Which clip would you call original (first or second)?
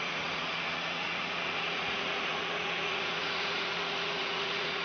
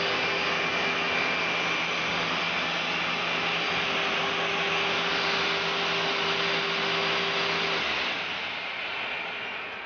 second